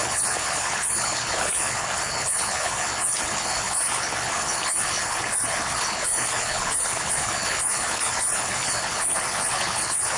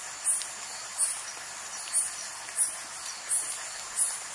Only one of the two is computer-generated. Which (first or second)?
first